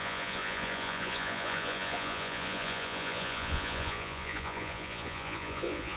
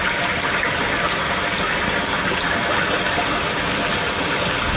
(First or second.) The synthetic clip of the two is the first